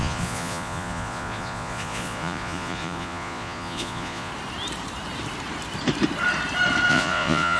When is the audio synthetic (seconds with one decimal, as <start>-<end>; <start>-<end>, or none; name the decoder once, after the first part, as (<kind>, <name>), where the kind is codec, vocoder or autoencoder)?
0.0-4.3 (vocoder, Vocos); 6.9-7.6